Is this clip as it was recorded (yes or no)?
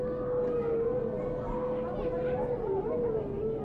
yes